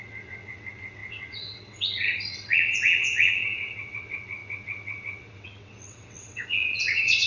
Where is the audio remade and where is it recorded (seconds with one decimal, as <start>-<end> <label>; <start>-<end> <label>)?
0.0-7.3 remade